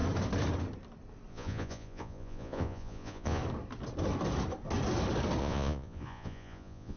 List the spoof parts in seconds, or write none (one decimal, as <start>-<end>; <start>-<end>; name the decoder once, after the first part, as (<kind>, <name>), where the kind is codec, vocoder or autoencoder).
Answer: 1.3-3.4 (vocoder, Vocos); 5.4-7.0